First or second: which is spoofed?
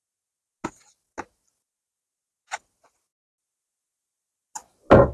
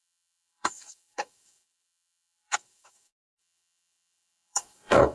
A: second